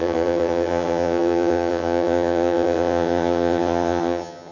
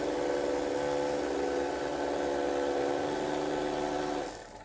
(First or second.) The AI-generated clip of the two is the first